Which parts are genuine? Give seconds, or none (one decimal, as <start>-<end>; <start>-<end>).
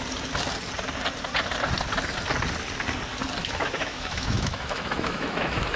0.0-3.4